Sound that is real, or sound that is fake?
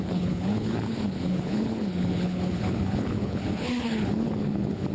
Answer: fake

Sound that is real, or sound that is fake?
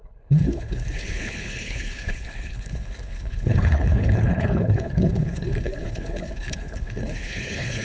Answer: fake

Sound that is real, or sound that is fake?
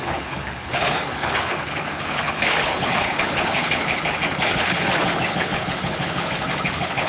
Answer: fake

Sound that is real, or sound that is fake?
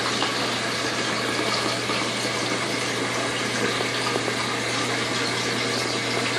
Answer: real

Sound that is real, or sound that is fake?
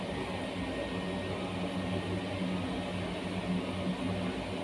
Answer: real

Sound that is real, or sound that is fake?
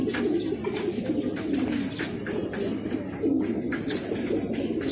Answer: real